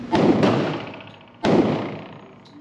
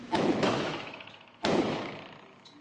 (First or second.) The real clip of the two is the first